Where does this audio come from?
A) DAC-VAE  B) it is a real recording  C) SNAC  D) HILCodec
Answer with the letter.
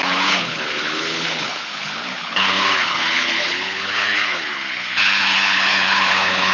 D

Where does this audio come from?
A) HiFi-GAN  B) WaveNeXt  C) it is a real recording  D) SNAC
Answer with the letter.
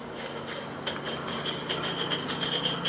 C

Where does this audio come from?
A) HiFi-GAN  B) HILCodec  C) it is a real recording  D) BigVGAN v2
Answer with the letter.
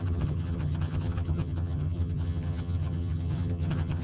A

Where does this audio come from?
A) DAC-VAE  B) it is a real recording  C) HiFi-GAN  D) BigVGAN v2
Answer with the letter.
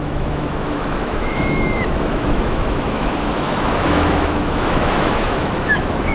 A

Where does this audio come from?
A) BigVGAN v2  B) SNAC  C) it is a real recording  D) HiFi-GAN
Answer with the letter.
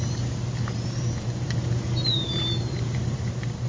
A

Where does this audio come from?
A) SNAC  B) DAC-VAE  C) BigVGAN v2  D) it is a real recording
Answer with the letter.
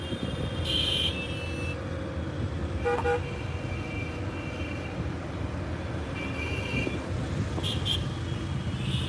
D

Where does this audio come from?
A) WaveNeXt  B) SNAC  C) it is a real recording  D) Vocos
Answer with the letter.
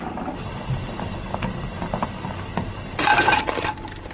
C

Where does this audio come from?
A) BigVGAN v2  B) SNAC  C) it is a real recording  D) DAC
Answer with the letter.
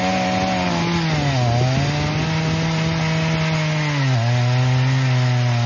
C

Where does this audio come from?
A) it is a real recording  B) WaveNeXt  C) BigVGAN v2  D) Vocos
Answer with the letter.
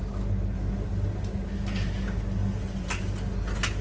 A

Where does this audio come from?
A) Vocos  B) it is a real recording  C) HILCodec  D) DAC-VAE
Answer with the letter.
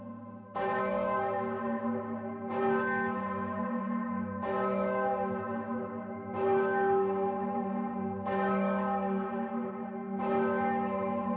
D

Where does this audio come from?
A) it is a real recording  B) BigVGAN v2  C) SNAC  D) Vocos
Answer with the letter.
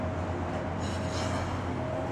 A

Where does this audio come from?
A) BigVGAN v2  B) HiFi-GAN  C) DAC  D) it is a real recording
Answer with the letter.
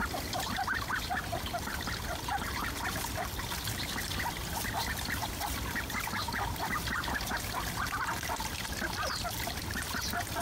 D